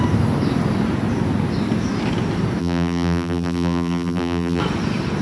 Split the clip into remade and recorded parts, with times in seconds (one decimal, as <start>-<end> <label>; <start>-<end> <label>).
0.0-2.6 recorded; 2.6-4.6 remade; 4.6-5.2 recorded